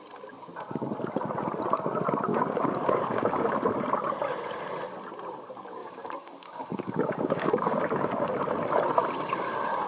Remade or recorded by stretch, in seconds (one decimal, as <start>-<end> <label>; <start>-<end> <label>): 0.0-2.3 recorded; 2.3-3.6 remade; 3.6-5.8 recorded; 5.8-8.3 remade; 8.3-9.9 recorded